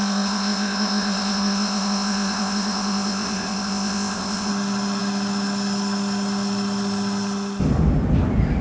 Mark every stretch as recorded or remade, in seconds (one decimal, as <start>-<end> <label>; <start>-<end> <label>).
0.0-4.5 remade; 4.5-8.6 recorded